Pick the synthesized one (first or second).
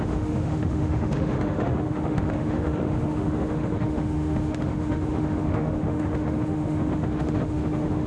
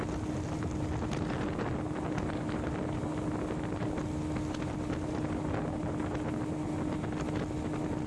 first